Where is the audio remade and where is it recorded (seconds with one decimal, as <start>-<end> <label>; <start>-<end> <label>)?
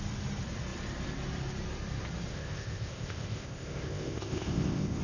0.0-2.3 recorded; 2.3-5.0 remade